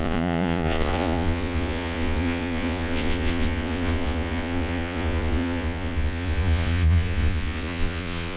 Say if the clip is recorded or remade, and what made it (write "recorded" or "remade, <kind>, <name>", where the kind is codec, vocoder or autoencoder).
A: remade, vocoder, Vocos